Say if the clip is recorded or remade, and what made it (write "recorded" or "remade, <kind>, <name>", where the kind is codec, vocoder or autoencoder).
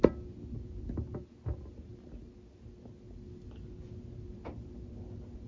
recorded